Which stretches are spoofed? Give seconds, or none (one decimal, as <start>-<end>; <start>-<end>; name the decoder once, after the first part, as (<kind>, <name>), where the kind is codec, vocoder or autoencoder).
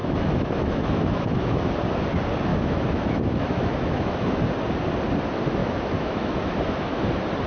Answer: 0.0-1.7 (autoencoder, DAC-VAE); 2.5-4.4; 5.6-7.0